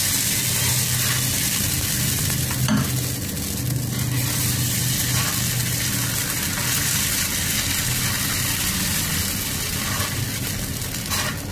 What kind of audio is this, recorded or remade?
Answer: recorded